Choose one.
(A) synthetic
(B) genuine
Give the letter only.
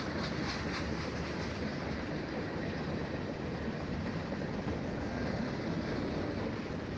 B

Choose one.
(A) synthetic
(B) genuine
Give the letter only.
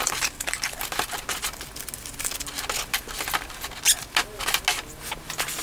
B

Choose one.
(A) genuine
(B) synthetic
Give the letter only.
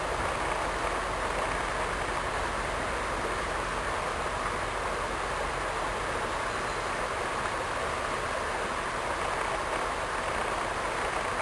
A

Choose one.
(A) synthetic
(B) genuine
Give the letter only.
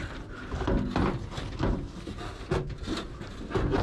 B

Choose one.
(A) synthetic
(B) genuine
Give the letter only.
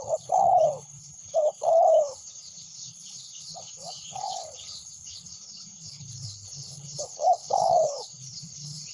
A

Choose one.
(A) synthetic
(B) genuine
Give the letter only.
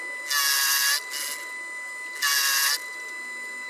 B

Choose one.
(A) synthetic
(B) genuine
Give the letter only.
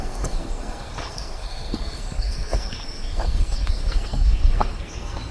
A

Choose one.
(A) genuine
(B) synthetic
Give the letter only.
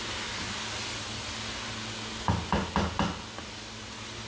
A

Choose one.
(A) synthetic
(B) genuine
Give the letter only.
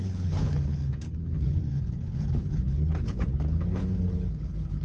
A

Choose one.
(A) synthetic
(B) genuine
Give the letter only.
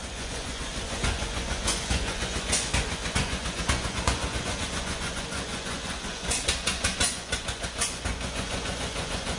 A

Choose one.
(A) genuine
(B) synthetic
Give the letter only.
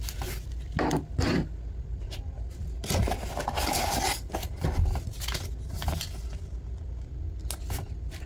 A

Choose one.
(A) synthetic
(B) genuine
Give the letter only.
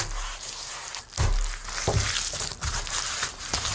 B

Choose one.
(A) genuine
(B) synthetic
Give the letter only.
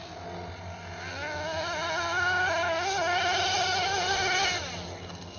A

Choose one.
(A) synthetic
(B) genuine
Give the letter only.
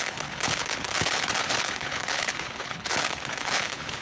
A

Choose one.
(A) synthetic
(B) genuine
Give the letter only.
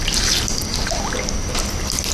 B